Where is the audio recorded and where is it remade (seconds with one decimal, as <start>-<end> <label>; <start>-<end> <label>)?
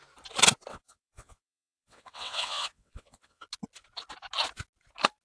0.0-0.7 recorded; 0.7-3.4 remade; 3.4-5.2 recorded